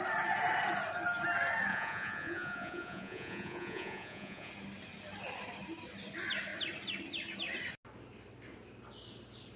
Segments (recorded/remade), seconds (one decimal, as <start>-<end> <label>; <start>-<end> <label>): 0.0-1.7 recorded; 1.7-4.5 remade; 4.5-9.6 recorded